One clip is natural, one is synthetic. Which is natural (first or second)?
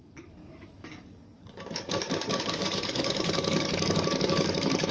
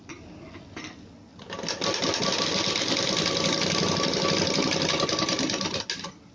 second